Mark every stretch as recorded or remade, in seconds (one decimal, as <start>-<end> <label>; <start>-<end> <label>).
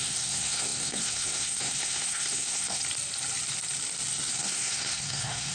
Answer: 0.0-2.8 remade; 2.8-4.3 recorded; 4.3-5.5 remade